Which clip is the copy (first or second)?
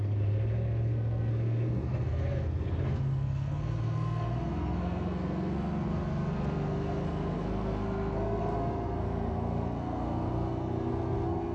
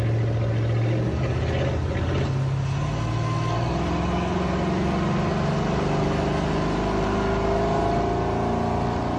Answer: first